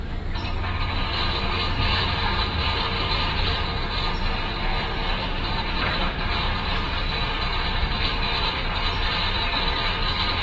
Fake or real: real